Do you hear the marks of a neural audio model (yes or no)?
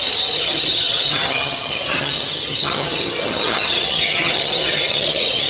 yes